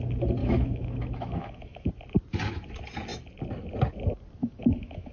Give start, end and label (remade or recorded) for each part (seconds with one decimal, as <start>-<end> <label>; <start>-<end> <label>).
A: 0.0-0.4 recorded; 0.4-1.9 remade; 1.9-4.4 recorded; 4.4-5.1 remade